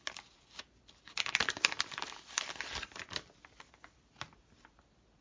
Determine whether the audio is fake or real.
real